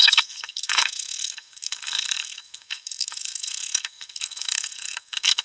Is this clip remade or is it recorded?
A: remade